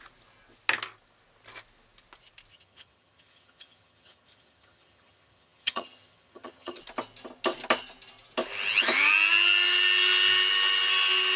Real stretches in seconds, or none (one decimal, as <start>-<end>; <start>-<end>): 0.0-2.5; 6.8-11.4